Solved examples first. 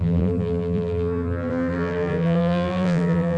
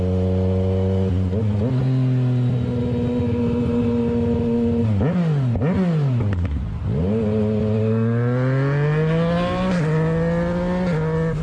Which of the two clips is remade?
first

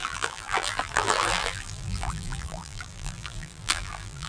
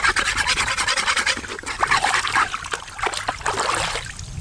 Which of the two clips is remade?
first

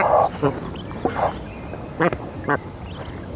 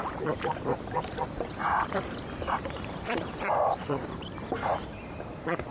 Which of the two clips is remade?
second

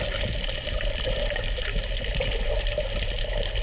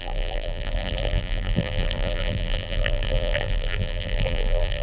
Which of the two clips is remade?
second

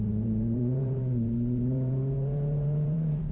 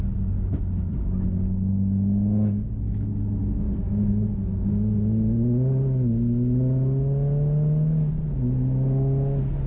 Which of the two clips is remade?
first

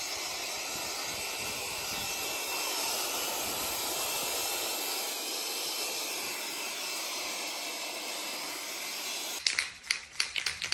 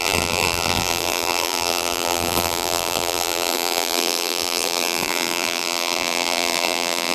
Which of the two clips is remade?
second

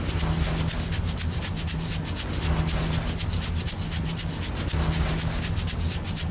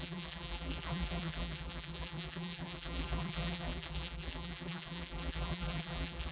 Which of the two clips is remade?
second